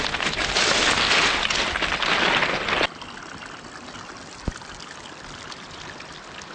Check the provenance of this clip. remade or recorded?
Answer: recorded